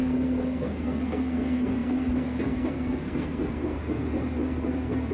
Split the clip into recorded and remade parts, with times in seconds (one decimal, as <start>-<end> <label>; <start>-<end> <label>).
0.0-5.1 remade